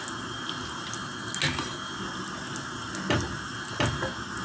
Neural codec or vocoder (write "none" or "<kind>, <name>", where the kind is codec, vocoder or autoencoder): none